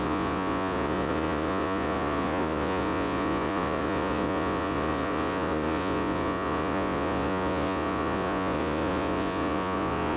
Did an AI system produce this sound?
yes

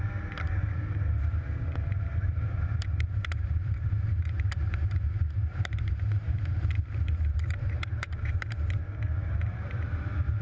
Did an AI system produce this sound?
yes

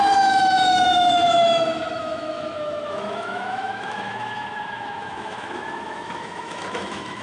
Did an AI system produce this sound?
yes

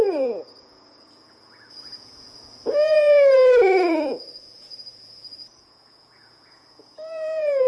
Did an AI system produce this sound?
yes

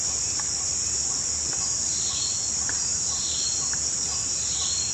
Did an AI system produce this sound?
no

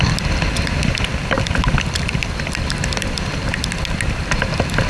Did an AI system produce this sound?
no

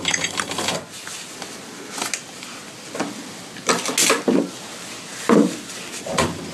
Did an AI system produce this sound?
no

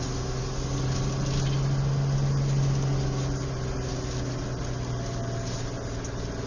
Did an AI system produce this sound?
no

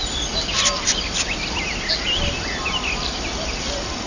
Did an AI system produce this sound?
yes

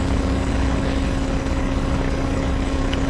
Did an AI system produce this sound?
yes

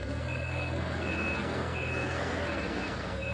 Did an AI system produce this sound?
yes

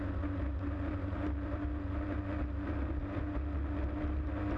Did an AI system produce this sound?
no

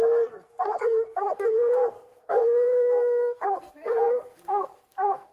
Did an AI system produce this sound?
yes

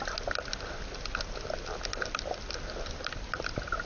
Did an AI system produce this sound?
no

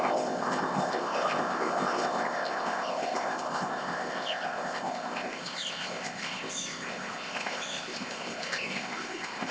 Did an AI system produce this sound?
yes